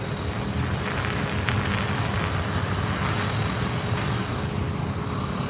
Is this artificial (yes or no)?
no